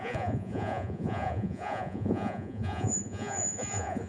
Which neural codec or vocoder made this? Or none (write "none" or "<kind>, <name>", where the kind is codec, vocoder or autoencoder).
vocoder, Vocos